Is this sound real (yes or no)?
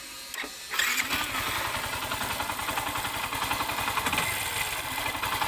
yes